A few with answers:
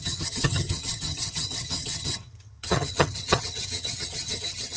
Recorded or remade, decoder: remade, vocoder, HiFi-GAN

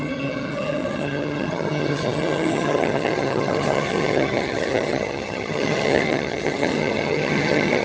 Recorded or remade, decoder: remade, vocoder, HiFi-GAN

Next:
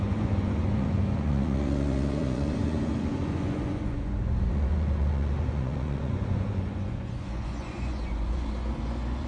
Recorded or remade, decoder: remade, vocoder, Vocos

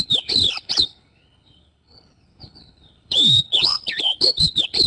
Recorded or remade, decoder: remade, codec, HILCodec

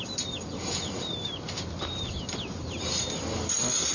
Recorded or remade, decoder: remade, vocoder, BigVGAN v2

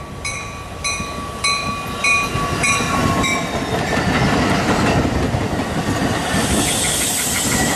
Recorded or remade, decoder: recorded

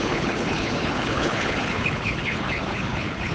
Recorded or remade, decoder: remade, codec, HILCodec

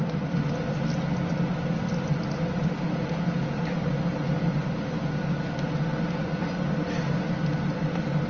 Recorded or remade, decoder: recorded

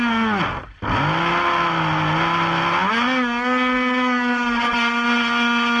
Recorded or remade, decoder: recorded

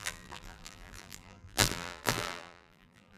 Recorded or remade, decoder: remade, vocoder, BigVGAN v2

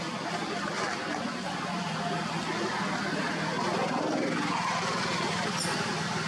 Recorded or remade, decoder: recorded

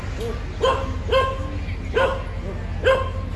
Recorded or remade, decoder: recorded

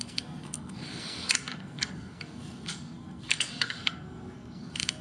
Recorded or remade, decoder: remade, codec, SNAC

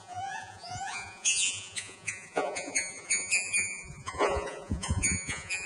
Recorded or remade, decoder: remade, vocoder, Vocos